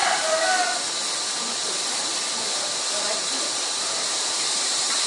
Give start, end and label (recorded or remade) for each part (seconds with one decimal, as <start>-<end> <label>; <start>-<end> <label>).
0.0-3.1 recorded; 3.1-5.1 remade